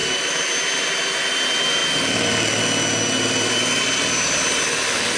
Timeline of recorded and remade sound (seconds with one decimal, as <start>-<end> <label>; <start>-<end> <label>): 0.0-0.6 remade; 0.6-5.2 recorded